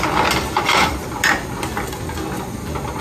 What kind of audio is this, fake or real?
real